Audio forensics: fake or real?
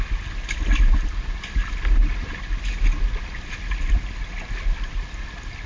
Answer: real